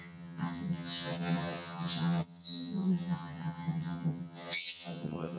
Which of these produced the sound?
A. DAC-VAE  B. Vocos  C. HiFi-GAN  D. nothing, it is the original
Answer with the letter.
C